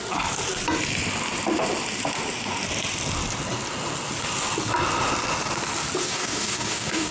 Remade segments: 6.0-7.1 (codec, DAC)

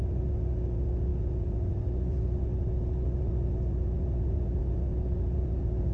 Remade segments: none

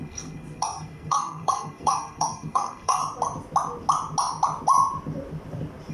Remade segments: 0.0-3.0 (codec, SNAC)

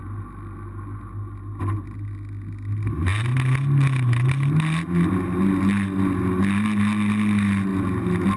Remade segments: none

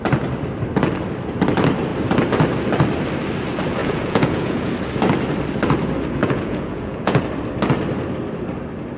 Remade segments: 3.8-4.7 (vocoder, Vocos); 6.2-7.2